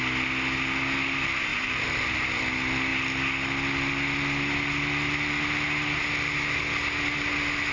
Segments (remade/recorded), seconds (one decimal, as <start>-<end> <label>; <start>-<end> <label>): 0.0-1.5 recorded; 1.5-2.4 remade; 2.4-7.7 recorded